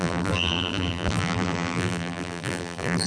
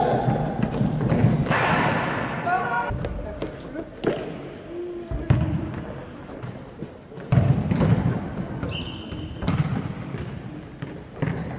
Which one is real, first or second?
second